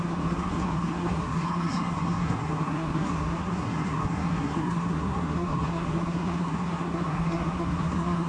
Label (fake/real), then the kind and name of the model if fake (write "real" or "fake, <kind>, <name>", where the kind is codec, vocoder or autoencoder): fake, codec, SNAC